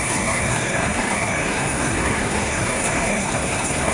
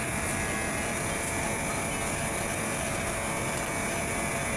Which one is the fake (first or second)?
first